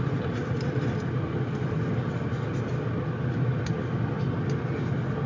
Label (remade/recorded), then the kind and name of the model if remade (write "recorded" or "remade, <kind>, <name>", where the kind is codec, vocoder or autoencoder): recorded